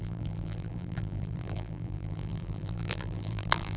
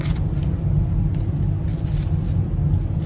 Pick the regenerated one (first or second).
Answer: first